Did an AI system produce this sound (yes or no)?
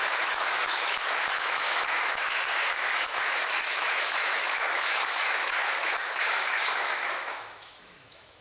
yes